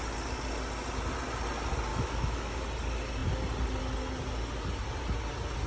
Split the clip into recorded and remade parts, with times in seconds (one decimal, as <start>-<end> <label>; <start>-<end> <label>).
0.0-1.9 recorded; 1.9-2.6 remade; 2.6-5.7 recorded